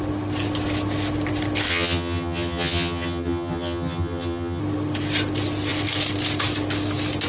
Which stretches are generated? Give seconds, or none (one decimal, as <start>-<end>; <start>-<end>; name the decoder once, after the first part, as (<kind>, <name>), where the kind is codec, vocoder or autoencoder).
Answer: 1.7-4.6 (vocoder, HiFi-GAN)